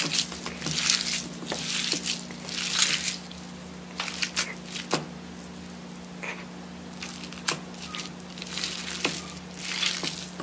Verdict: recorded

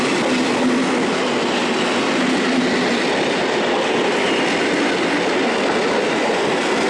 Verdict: recorded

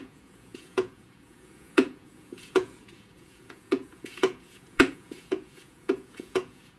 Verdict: remade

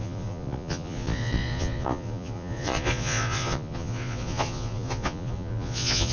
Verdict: remade